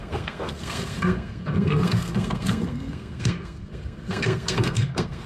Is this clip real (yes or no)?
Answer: no